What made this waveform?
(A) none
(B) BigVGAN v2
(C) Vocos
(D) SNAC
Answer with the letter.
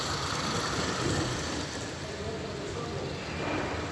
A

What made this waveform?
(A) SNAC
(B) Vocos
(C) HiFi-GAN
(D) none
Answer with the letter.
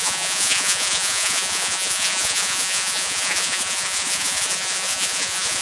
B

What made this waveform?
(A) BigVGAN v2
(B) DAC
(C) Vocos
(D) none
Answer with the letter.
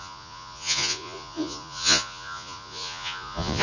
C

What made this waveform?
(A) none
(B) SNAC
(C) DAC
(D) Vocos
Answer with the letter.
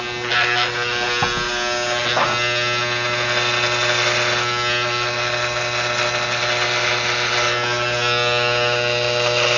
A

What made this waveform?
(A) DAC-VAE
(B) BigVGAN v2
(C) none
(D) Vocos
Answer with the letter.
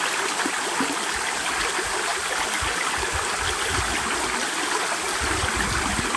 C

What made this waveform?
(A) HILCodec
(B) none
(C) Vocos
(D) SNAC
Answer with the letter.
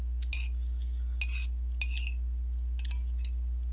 B